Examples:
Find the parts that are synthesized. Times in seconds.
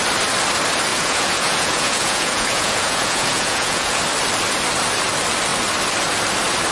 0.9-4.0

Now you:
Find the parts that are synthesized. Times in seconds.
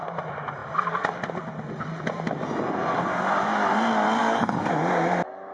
4.2-4.7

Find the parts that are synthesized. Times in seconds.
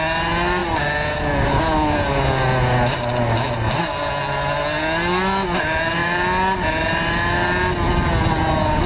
none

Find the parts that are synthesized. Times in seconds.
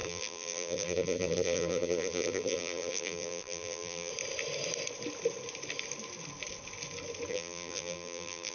0.0-4.1; 7.3-8.5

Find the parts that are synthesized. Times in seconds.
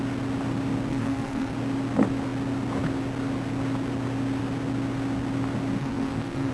0.9-1.5; 5.8-6.5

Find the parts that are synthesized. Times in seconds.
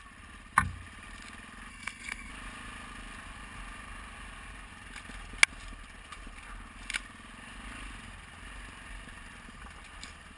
1.7-2.3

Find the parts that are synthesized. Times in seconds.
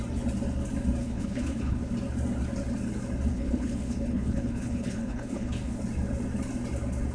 1.0-1.9; 3.3-5.8